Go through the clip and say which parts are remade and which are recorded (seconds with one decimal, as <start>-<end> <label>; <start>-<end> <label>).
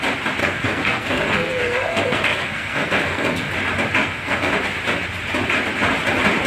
0.0-0.4 recorded; 0.4-3.5 remade; 3.5-4.0 recorded; 4.0-4.5 remade; 4.5-6.5 recorded